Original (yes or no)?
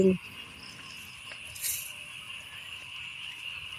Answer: yes